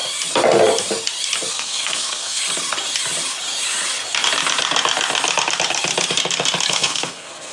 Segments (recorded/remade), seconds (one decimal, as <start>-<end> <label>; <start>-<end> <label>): 0.0-1.5 recorded; 1.5-2.4 remade; 2.4-6.7 recorded; 6.7-7.5 remade